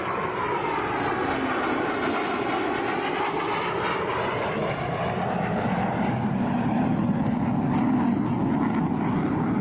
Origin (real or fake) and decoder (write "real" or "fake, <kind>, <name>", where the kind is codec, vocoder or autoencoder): real